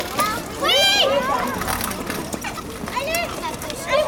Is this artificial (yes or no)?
no